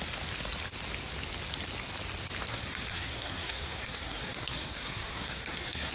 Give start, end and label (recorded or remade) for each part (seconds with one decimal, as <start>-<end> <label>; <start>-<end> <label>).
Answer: 0.0-2.5 recorded; 2.5-5.9 remade